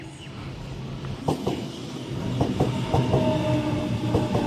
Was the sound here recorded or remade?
recorded